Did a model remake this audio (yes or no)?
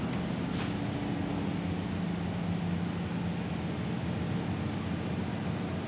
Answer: no